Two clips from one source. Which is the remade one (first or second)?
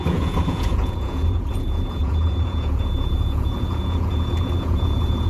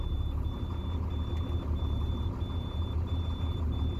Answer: first